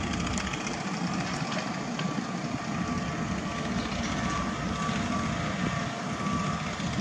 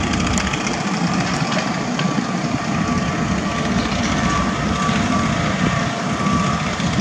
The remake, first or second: second